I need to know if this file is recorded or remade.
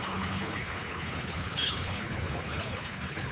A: remade